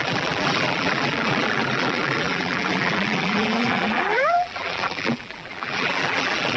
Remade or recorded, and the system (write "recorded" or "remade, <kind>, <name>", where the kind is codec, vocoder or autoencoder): remade, vocoder, BigVGAN v2